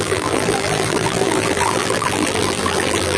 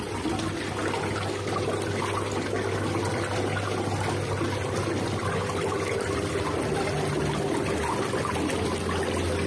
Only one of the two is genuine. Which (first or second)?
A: second